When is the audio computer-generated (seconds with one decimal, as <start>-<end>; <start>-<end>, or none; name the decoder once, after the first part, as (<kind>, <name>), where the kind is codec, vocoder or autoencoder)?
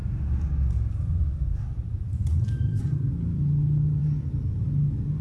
0.0-3.1 (vocoder, BigVGAN v2); 4.0-4.6